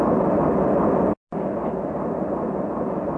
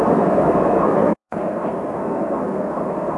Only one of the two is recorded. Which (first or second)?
first